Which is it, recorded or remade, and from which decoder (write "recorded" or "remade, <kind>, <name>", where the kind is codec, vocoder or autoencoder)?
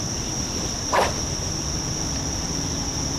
recorded